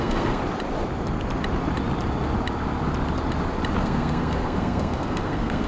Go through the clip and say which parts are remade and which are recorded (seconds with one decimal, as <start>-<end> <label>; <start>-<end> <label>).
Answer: 0.0-0.4 remade; 0.4-3.8 recorded; 3.8-5.7 remade